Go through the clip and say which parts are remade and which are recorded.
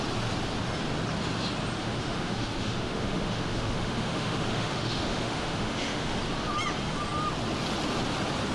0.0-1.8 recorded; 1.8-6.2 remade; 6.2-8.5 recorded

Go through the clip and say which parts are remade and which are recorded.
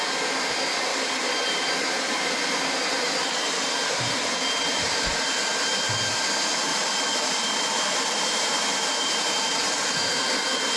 0.0-0.9 recorded; 0.9-5.1 remade; 5.1-6.7 recorded; 6.7-9.8 remade; 9.8-10.8 recorded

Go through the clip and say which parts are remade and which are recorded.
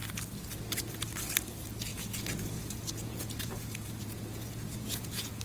0.0-1.9 recorded; 1.9-5.4 remade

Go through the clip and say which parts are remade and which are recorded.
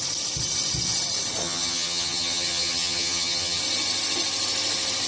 0.0-1.4 recorded; 1.4-3.6 remade; 3.6-5.1 recorded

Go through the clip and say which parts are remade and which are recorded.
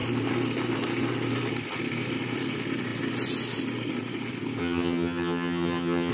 0.0-4.6 recorded; 4.6-6.1 remade